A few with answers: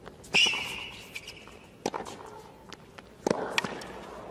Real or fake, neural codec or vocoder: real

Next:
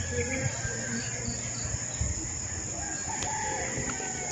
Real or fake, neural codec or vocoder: real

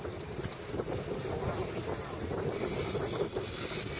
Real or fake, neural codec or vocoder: real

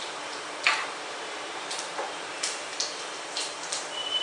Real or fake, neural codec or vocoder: fake, vocoder, BigVGAN v2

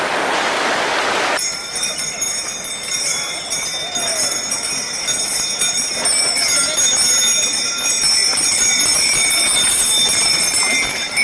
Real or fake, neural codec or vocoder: real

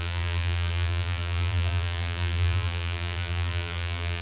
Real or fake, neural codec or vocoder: fake, vocoder, BigVGAN v2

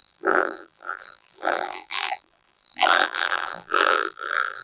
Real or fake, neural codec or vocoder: fake, vocoder, BigVGAN v2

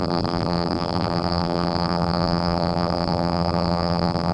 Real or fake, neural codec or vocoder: fake, vocoder, BigVGAN v2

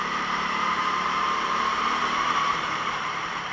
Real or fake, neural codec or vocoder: fake, vocoder, BigVGAN v2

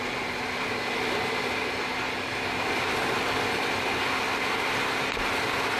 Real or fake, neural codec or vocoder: real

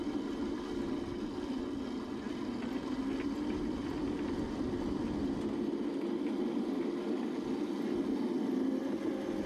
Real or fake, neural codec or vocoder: real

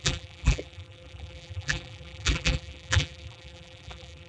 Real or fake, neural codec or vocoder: fake, vocoder, BigVGAN v2